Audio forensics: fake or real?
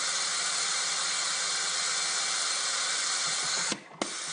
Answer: real